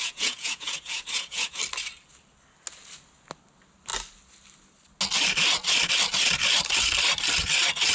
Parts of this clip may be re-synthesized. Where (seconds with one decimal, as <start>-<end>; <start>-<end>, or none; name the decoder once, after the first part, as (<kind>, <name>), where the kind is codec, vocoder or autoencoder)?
0.0-1.6 (vocoder, Vocos)